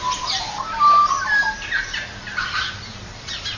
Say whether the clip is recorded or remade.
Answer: recorded